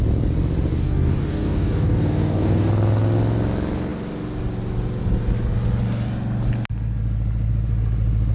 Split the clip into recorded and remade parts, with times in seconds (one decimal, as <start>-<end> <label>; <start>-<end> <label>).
0.0-0.7 recorded; 0.7-2.7 remade; 2.7-8.3 recorded